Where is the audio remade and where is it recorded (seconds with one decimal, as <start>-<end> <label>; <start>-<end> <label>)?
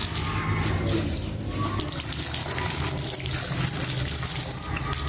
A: 0.0-5.1 recorded